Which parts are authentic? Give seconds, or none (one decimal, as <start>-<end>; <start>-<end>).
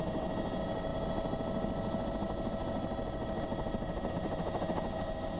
0.0-5.4